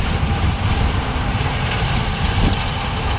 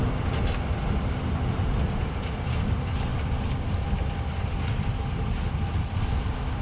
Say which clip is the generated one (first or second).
first